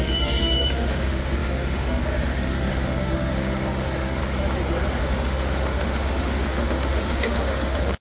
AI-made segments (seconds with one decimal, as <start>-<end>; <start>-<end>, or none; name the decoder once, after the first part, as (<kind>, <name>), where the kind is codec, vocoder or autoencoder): 0.0-4.2 (autoencoder, DAC-VAE); 5.0-8.0